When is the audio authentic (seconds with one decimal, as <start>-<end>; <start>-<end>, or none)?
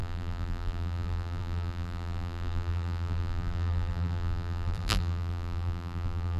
none